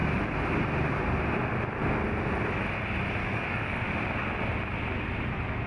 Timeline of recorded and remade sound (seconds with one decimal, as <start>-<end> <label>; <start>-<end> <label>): 0.0-3.2 recorded; 3.2-3.9 remade; 3.9-5.7 recorded